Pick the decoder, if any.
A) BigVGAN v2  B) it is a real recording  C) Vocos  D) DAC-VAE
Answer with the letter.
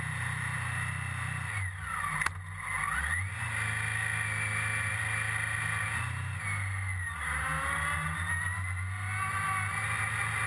B